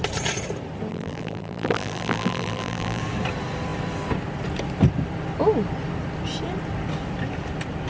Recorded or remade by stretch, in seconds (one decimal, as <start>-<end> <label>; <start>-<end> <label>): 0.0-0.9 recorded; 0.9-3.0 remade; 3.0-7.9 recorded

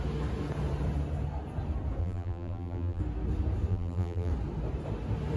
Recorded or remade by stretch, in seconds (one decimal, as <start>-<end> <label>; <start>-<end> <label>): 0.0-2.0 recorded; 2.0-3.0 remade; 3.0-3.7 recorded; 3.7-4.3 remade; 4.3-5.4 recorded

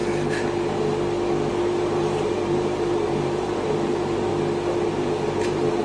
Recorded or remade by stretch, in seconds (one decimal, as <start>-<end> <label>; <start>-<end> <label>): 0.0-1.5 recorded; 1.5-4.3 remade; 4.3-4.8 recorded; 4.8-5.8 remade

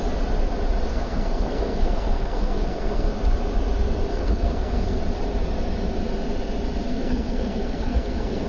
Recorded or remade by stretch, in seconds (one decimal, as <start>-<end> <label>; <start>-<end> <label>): 0.0-0.9 recorded; 0.9-3.1 remade; 3.1-4.1 recorded; 4.1-5.0 remade; 5.0-6.9 recorded; 6.9-8.5 remade

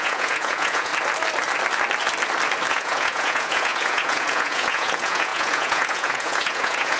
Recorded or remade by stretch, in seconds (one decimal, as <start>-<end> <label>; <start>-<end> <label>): 0.0-0.9 remade; 0.9-2.7 recorded; 2.7-7.0 remade